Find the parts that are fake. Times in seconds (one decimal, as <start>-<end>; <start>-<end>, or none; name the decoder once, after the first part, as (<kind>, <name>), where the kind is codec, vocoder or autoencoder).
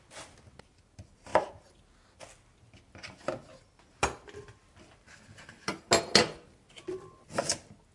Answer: none